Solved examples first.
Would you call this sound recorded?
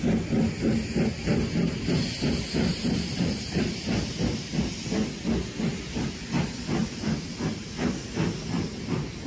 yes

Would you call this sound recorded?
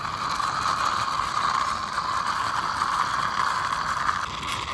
yes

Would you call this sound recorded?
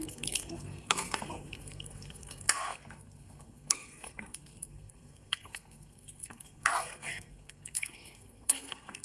no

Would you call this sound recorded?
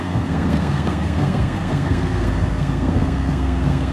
no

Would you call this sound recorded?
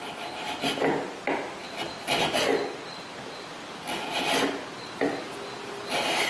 yes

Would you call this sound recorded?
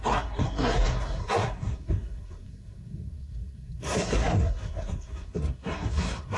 no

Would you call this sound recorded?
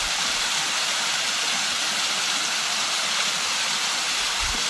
yes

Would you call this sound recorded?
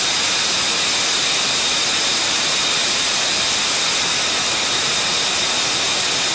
yes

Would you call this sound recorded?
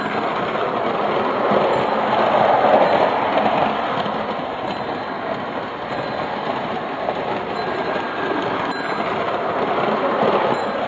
yes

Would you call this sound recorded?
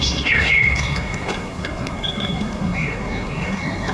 no